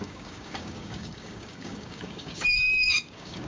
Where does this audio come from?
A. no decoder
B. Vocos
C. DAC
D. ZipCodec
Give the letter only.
C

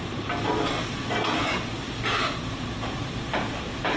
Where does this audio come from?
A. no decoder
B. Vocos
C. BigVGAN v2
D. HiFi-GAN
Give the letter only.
A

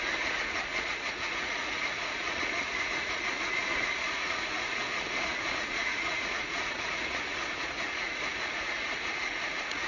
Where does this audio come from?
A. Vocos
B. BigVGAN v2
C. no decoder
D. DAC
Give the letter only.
A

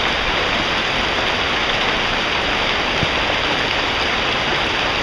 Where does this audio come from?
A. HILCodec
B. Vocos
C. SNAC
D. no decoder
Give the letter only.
D